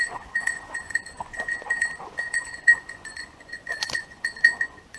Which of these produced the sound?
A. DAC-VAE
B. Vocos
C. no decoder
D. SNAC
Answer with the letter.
B